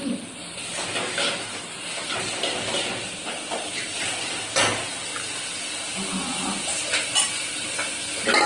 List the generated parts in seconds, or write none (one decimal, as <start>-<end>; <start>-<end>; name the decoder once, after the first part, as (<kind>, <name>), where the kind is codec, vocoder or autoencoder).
none